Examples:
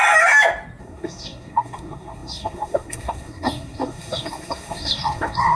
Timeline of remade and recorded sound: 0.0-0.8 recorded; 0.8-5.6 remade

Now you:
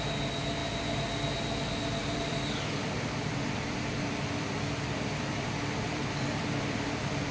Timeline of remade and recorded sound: 0.0-2.0 recorded; 2.0-6.0 remade; 6.0-7.3 recorded

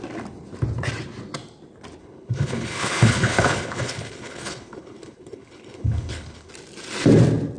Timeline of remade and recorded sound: 0.0-2.0 recorded; 2.0-6.5 remade; 6.5-7.6 recorded